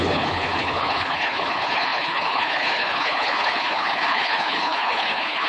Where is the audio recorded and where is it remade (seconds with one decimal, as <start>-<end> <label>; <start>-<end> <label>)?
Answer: 0.0-5.5 remade